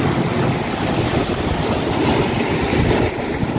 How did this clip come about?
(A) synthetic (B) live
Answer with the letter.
B